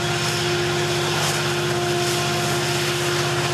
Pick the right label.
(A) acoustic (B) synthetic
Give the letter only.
A